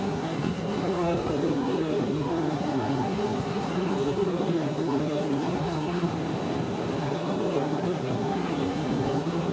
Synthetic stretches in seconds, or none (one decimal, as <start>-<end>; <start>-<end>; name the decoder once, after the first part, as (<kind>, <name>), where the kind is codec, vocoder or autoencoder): 0.0-6.1 (codec, SNAC); 7.0-9.5